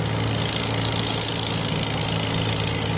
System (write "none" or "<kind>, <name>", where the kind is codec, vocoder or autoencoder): none